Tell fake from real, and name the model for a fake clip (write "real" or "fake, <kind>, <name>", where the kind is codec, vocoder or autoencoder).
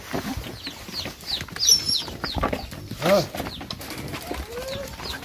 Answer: real